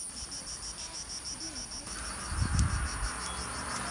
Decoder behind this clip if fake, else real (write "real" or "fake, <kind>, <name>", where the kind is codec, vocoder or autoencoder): real